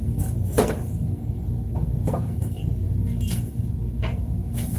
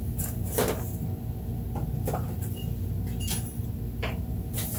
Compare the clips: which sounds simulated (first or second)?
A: first